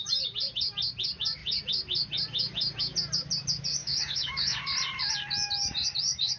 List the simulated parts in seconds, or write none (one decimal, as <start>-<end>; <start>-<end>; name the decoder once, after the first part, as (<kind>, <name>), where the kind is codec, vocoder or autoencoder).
3.8-4.6 (codec, DAC)